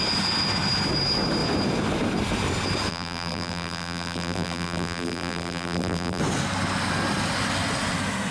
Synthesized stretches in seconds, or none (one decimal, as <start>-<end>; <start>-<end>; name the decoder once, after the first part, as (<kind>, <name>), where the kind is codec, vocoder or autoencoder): 2.9-6.2 (vocoder, BigVGAN v2)